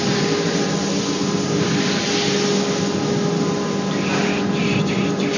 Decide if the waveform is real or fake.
real